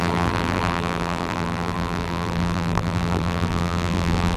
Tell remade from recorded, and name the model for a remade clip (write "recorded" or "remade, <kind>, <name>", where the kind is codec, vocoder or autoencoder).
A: remade, vocoder, BigVGAN v2